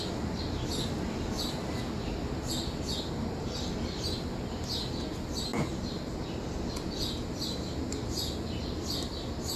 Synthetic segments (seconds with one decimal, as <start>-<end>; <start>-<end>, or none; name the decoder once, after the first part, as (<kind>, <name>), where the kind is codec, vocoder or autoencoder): none